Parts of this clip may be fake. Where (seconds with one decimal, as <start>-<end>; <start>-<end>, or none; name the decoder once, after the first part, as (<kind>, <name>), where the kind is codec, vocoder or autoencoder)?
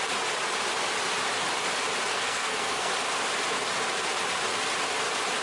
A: 2.1-2.9 (codec, SNAC)